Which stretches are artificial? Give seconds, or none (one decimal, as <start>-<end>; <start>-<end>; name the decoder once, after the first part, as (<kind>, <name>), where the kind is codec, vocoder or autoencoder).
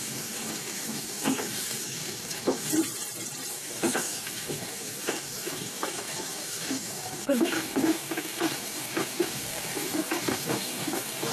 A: 0.0-2.7 (codec, DAC); 3.5-11.3